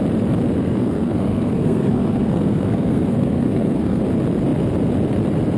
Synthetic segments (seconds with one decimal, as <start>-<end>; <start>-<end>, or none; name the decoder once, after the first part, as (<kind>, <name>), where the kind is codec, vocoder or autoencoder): 0.6-4.0 (codec, SNAC)